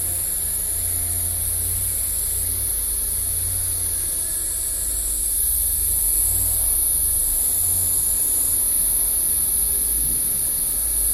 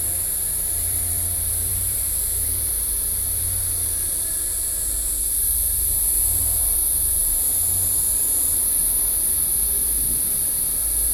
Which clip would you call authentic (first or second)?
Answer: first